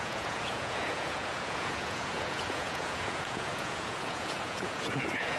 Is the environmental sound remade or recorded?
remade